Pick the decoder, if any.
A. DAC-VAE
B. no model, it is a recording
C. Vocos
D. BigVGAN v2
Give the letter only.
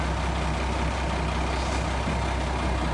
B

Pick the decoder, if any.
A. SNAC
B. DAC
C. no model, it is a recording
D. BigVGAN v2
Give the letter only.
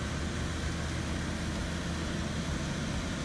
C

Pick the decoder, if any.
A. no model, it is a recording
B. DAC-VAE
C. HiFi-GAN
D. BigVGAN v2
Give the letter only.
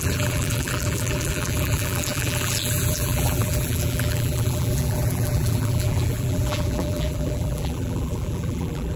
D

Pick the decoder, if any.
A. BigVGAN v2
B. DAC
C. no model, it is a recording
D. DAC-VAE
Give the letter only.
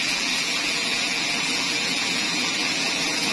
A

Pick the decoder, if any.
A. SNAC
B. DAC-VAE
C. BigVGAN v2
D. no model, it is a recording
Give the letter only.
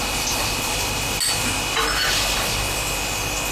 D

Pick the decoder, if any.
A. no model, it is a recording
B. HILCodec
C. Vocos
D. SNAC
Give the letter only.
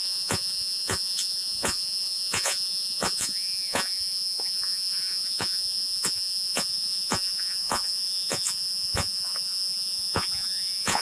C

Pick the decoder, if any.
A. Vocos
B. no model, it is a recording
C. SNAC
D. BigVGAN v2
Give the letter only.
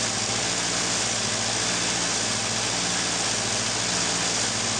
B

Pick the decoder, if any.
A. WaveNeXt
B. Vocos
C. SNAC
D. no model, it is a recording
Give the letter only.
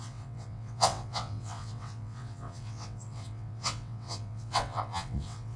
A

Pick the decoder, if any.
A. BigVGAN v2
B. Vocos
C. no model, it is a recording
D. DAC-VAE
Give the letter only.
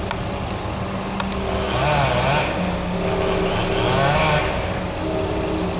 C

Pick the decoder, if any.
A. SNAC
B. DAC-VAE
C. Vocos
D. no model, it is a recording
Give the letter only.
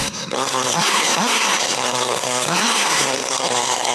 A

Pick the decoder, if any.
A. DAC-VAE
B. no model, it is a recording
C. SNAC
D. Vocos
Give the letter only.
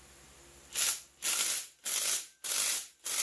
B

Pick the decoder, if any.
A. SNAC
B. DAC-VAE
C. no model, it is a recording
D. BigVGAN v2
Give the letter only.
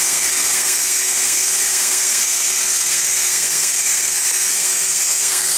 A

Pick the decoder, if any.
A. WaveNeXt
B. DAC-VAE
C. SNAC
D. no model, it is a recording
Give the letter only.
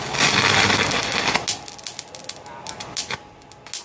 D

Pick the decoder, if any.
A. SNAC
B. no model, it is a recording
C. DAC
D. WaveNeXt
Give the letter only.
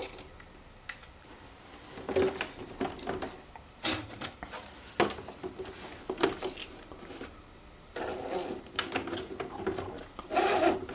B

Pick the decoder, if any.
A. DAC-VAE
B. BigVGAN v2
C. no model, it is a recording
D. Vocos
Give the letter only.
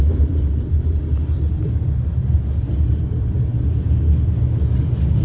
C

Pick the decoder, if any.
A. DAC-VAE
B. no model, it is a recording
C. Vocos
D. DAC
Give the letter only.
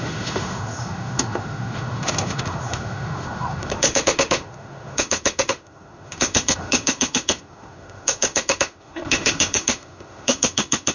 A